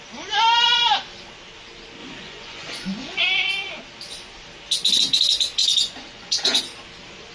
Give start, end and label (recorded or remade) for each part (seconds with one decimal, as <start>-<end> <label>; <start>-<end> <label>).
0.0-2.0 recorded; 2.0-3.2 remade; 3.2-5.6 recorded; 5.6-6.6 remade; 6.6-7.3 recorded